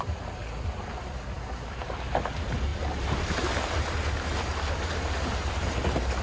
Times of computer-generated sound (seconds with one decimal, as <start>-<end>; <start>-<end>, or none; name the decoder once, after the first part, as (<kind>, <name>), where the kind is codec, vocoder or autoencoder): none